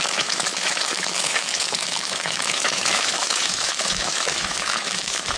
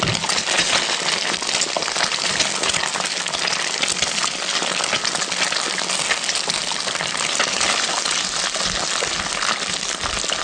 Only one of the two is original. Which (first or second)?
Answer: second